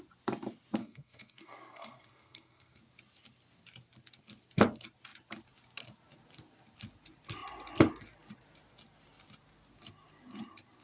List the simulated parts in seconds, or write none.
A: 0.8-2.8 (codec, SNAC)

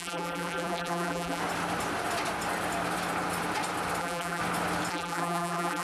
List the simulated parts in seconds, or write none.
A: 0.0-1.4 (vocoder, BigVGAN v2); 4.0-4.4; 4.9-5.8